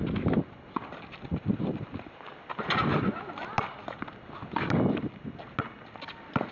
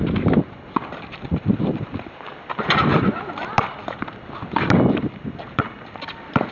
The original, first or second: first